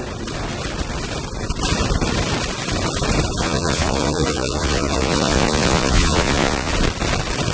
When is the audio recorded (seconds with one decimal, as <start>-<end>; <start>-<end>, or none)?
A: 0.0-3.4; 6.7-7.5